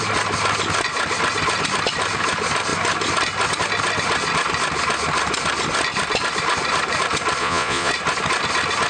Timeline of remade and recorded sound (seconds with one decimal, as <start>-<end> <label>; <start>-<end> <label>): 0.0-7.4 recorded; 7.4-7.9 remade; 7.9-8.9 recorded